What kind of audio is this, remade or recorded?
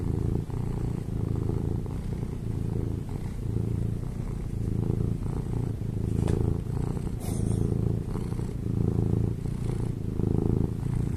remade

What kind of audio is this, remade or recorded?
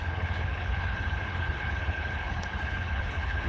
remade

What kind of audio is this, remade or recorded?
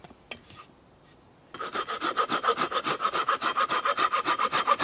recorded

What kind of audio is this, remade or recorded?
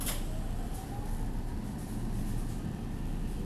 recorded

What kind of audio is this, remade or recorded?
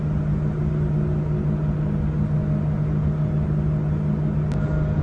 recorded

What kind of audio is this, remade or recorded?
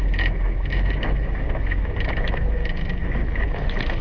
remade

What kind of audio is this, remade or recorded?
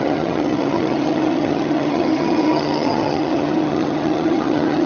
remade